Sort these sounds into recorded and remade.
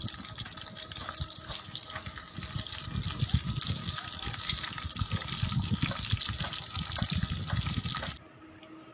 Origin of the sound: recorded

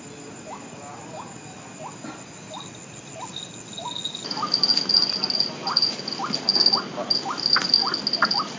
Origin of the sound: recorded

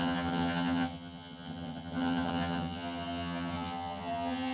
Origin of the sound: remade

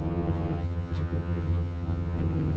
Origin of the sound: remade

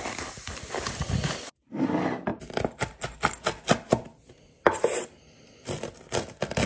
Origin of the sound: recorded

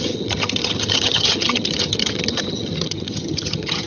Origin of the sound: remade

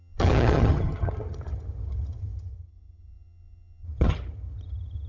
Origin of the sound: remade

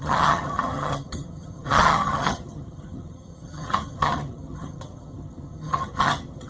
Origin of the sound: remade